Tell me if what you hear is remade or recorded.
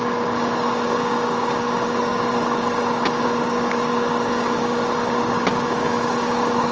remade